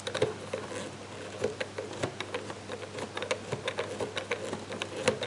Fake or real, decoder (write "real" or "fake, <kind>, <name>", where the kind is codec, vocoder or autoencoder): real